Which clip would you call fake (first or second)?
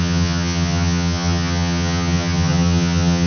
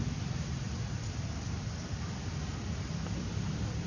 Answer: first